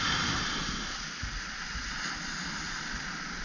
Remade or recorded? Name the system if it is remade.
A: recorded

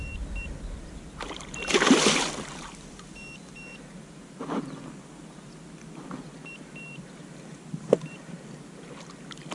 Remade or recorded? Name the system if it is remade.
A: recorded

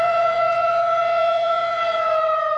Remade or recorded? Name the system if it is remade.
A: remade, vocoder, Vocos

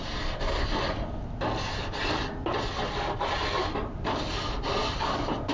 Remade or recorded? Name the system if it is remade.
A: recorded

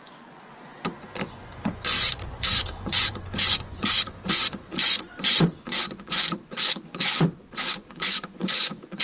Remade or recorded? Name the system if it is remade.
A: remade, vocoder, Vocos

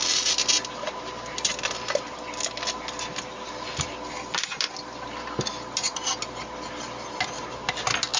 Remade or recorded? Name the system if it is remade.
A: recorded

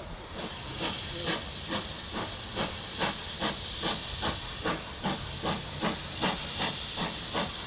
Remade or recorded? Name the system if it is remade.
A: recorded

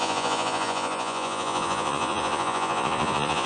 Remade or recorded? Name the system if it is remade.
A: remade, vocoder, Vocos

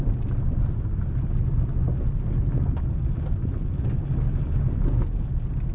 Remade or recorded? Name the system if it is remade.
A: recorded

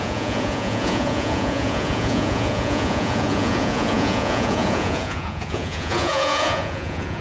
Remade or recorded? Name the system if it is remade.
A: remade, vocoder, Vocos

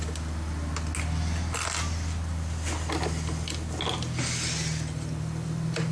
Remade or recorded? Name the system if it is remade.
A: recorded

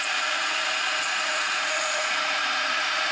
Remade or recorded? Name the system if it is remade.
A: remade, vocoder, Vocos